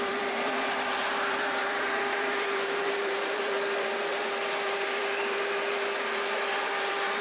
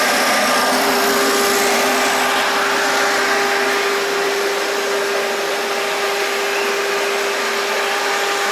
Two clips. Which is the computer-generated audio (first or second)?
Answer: first